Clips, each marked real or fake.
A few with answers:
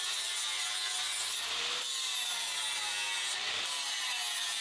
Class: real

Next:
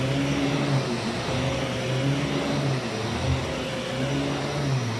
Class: real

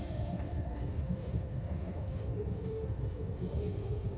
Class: fake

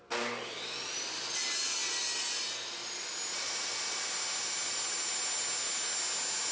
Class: real